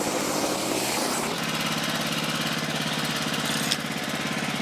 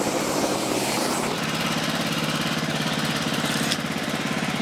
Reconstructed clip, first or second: second